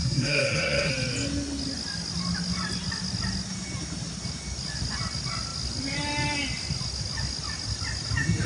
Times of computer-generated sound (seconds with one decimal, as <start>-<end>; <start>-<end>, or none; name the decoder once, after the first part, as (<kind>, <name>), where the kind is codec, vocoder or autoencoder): 0.0-0.9 (codec, SNAC)